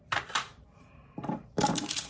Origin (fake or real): fake